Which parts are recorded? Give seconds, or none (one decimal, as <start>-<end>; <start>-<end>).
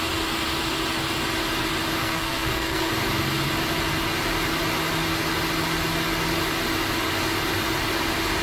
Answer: 0.0-2.0; 2.9-8.4